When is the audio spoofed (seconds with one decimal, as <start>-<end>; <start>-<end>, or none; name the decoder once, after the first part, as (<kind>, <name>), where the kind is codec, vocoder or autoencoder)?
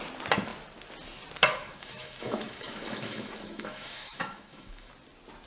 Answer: 1.6-4.9 (autoencoder, DAC-VAE)